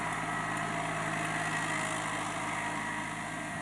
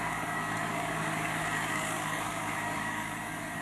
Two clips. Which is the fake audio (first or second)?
second